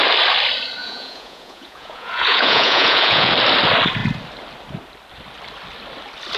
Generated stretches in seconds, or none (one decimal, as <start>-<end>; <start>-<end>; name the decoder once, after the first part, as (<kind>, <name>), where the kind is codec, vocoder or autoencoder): 0.8-3.3 (vocoder, Vocos)